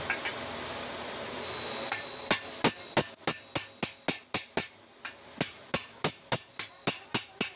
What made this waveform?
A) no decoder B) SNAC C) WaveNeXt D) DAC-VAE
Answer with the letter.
A